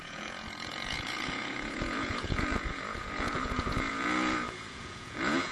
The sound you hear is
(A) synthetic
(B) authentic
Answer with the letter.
A